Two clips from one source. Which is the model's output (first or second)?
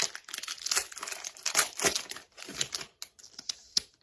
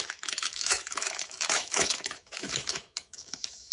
second